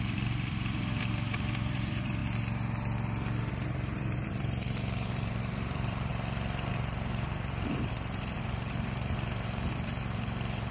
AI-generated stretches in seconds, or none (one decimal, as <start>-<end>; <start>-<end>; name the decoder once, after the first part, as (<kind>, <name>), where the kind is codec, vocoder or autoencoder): 0.0-2.2 (vocoder, BigVGAN v2); 3.5-6.1; 6.7-10.7